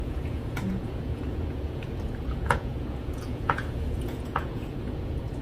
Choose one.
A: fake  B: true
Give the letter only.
A